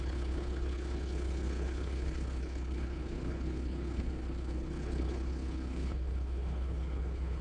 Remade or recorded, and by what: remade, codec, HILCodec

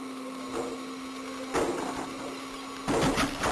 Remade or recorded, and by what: recorded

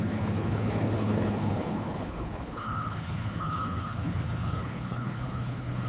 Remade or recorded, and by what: remade, codec, HILCodec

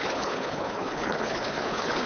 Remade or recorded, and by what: remade, codec, HILCodec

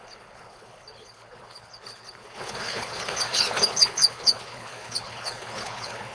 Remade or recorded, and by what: remade, codec, HILCodec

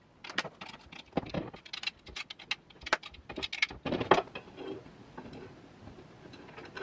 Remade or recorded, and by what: recorded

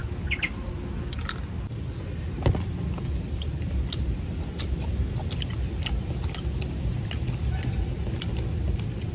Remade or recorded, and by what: recorded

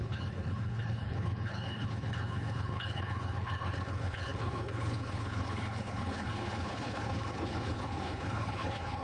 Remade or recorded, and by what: remade, codec, HILCodec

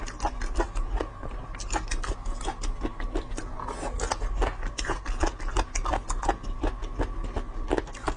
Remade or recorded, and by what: recorded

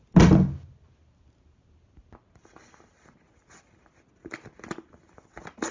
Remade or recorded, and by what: recorded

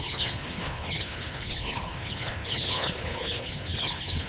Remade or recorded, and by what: remade, codec, HILCodec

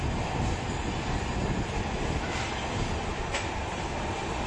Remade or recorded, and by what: recorded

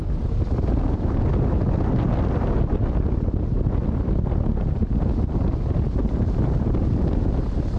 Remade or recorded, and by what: recorded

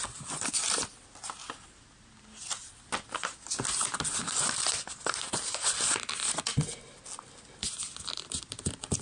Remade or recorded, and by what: recorded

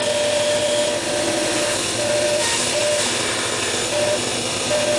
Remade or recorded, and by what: recorded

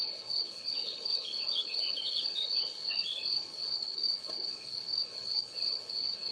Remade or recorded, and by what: remade, codec, HILCodec